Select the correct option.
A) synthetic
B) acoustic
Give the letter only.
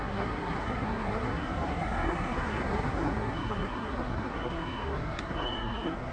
A